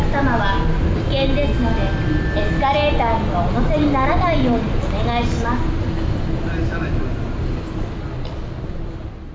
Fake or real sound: real